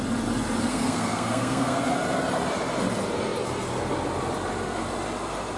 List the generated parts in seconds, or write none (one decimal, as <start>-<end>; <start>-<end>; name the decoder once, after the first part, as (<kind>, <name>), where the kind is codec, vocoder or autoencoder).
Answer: 0.7-1.8 (codec, SNAC)

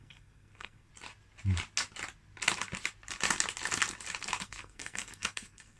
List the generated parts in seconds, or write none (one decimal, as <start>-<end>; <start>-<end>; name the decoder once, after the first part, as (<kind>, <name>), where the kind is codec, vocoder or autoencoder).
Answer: 0.0-0.9 (codec, SNAC); 4.4-5.8

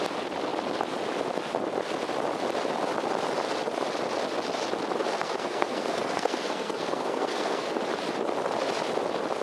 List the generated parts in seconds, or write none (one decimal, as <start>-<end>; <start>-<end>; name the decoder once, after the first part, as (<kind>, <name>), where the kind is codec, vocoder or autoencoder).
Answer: 5.0-7.8 (codec, SNAC)

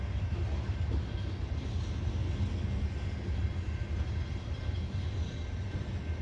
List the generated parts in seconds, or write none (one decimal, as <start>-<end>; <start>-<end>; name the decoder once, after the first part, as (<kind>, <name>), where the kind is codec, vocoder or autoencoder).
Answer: none

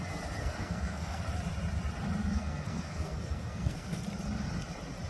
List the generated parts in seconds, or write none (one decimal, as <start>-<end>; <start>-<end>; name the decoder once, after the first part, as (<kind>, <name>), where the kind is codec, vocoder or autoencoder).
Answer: 0.4-1.2 (codec, SNAC); 2.2-4.0

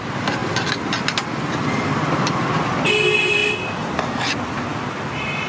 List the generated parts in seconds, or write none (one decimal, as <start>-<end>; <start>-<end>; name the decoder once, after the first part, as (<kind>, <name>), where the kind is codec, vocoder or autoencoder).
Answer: none

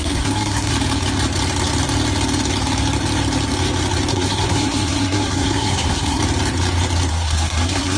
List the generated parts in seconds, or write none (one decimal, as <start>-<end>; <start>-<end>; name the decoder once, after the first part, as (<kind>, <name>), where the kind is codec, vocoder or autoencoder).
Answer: 0.0-0.7 (codec, SNAC); 4.1-6.2; 7.1-8.0

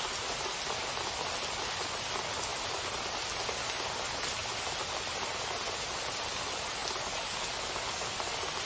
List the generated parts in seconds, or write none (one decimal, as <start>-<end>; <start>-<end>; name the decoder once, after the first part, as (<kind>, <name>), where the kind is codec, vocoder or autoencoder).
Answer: none